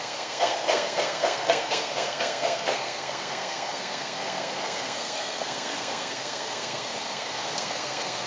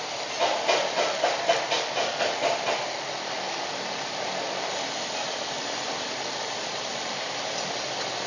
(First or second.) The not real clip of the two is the first